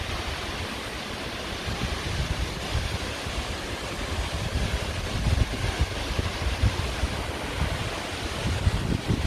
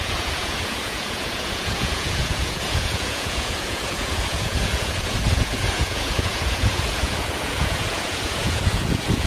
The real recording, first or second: first